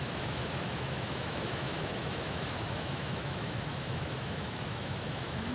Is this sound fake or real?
fake